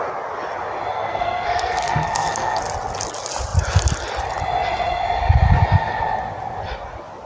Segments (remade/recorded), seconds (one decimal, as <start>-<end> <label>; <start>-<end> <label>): 0.0-0.9 recorded; 0.9-2.6 remade; 2.6-7.3 recorded